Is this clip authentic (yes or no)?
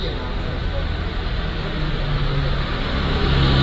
yes